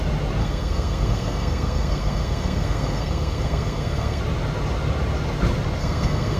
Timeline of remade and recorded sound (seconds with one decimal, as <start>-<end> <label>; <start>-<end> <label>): 0.0-0.4 recorded; 0.4-4.2 remade; 4.2-5.8 recorded; 5.8-6.4 remade